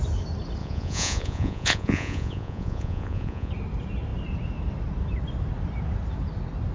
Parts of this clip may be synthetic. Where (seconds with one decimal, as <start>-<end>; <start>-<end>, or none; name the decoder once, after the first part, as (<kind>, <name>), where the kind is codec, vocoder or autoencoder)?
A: 0.6-3.5 (vocoder, Vocos)